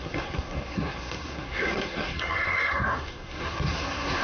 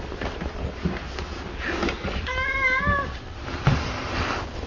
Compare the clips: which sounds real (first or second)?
second